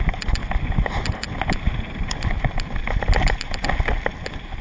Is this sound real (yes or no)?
yes